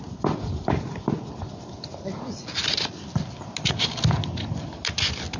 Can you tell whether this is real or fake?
real